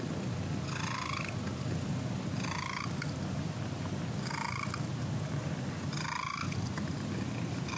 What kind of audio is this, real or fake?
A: real